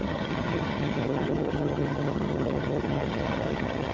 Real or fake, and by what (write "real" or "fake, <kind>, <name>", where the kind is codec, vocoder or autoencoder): fake, vocoder, HiFi-GAN